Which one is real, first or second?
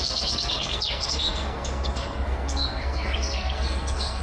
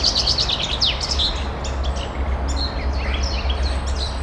second